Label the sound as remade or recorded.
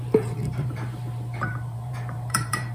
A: remade